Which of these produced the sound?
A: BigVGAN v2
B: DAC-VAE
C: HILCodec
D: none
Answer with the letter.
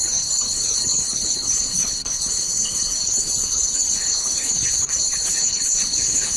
C